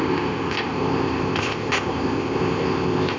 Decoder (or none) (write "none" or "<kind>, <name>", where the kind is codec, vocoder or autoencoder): codec, ZipCodec